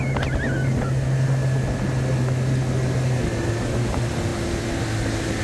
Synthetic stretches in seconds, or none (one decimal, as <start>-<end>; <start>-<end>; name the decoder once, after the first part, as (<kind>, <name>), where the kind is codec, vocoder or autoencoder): none